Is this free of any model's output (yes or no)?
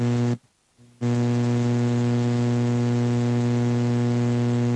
yes